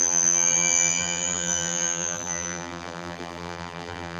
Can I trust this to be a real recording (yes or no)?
no